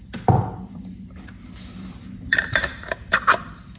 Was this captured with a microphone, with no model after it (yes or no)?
no